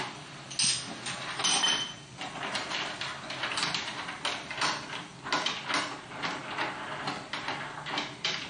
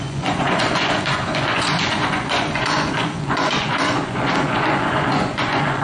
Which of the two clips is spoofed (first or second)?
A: second